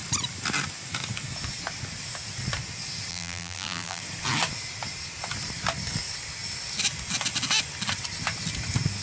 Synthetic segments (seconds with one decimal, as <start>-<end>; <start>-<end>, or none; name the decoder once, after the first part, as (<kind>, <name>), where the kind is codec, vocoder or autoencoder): 3.1-4.0 (vocoder, BigVGAN v2)